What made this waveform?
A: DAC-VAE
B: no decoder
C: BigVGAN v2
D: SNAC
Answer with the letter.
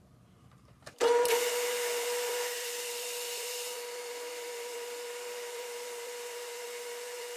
C